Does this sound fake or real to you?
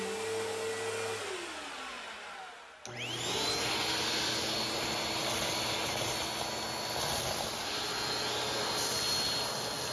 real